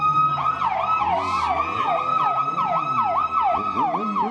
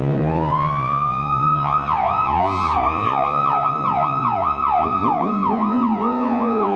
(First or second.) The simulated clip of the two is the second